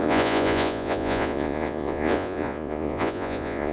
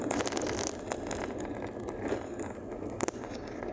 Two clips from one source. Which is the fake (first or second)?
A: first